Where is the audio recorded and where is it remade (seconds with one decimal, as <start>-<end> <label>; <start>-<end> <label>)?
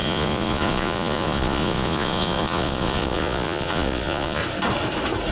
0.0-4.4 remade; 4.4-5.3 recorded